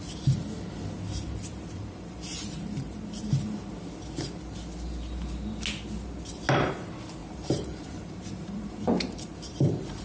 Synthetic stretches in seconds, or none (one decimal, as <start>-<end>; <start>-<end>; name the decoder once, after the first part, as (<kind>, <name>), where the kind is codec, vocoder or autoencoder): 1.5-3.7 (vocoder, BigVGAN v2); 7.2-10.0